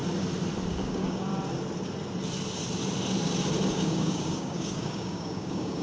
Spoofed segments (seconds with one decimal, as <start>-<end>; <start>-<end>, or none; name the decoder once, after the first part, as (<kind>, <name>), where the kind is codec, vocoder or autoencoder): 0.7-1.3 (codec, DAC); 3.7-5.8